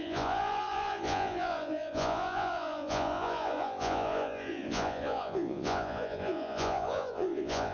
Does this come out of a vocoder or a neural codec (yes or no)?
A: yes